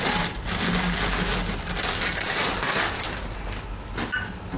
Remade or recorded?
recorded